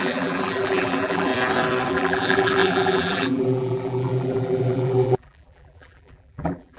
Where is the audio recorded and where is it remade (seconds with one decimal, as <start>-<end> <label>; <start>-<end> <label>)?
0.0-1.3 remade; 1.3-1.9 recorded; 1.9-6.8 remade